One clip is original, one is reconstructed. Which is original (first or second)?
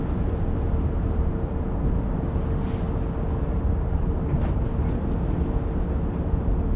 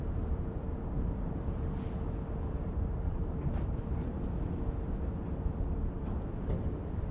first